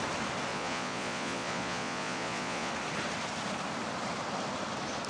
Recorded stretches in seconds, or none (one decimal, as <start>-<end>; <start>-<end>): 0.0-0.5; 2.7-5.1